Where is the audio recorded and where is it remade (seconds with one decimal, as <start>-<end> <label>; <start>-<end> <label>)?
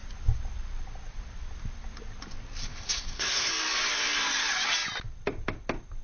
0.0-2.6 recorded; 2.6-3.5 remade; 3.5-6.0 recorded